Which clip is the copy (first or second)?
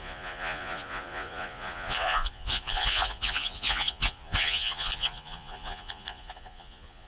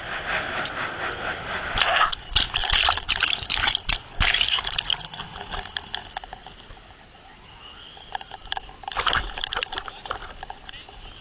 first